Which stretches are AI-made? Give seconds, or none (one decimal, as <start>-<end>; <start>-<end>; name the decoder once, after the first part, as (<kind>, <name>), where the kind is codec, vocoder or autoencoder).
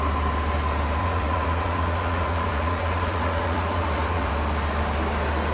1.0-4.3 (vocoder, Vocos)